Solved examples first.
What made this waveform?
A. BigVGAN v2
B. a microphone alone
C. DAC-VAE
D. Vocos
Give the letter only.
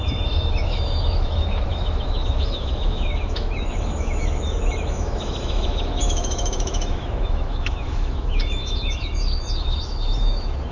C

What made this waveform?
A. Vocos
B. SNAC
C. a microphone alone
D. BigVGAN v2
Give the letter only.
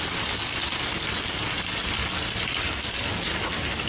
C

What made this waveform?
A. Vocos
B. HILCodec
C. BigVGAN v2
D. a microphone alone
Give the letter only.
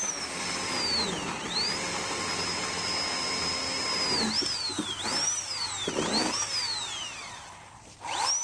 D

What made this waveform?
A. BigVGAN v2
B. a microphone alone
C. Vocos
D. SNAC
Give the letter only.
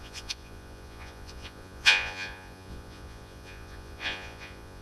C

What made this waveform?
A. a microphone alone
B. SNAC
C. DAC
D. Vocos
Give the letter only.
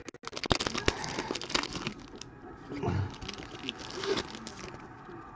A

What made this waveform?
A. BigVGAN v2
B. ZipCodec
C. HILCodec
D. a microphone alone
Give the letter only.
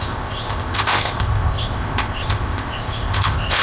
B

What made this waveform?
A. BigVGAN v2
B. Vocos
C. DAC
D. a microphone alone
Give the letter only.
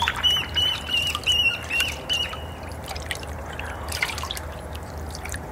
A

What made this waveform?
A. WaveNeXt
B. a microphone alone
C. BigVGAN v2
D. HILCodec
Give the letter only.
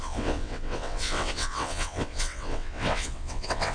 A